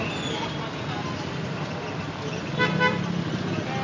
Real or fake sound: real